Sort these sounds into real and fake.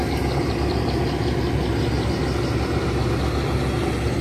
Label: real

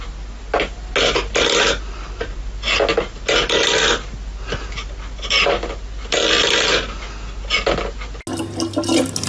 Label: real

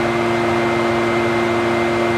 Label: real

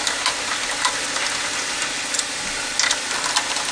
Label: real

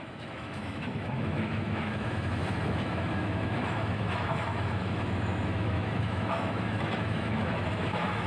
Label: fake